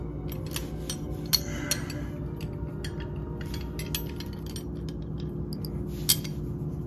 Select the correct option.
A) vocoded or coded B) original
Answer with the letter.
B